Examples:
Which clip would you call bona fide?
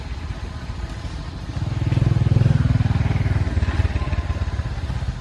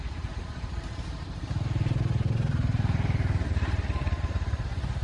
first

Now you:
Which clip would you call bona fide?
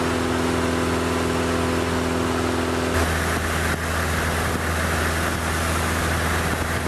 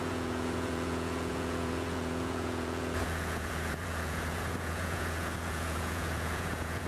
first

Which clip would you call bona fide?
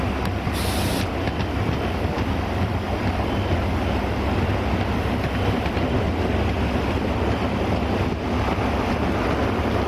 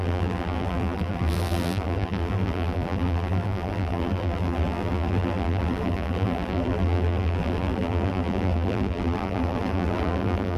first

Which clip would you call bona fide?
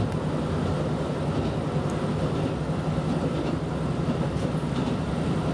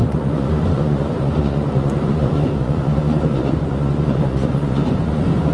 first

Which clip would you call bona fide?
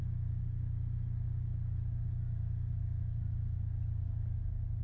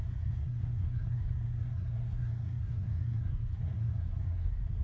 first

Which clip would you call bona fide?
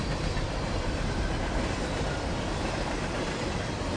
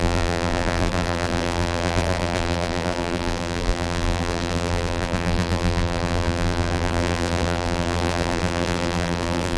first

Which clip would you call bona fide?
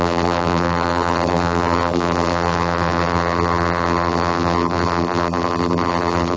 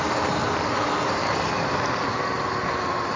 second